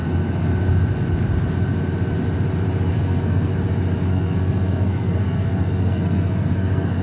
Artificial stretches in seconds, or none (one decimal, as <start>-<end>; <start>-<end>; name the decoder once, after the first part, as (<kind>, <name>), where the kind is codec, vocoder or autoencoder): 2.9-3.5 (codec, SNAC); 4.0-7.0

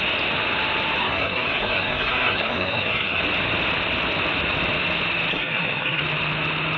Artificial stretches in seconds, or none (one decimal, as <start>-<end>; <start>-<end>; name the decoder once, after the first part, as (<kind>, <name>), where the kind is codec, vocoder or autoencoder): 1.0-3.2 (codec, SNAC); 5.3-6.0

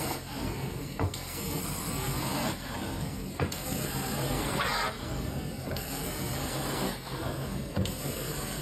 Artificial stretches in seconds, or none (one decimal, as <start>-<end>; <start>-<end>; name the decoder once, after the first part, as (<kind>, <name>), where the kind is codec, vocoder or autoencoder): 0.0-8.6 (codec, SNAC)

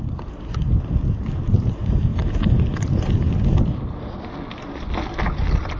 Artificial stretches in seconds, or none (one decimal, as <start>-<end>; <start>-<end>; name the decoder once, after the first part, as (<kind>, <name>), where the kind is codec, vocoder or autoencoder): none